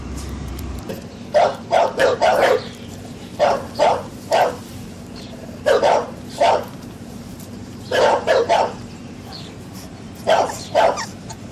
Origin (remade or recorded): remade